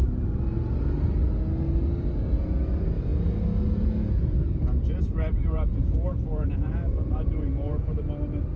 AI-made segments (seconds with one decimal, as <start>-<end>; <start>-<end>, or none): 5.3-8.0